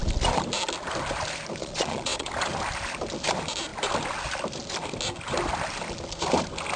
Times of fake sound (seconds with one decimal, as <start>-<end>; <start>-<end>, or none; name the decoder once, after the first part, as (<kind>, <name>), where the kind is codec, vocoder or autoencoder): 1.6-2.3 (vocoder, Vocos)